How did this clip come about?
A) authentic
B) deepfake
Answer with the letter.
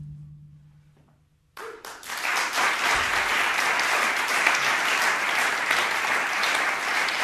A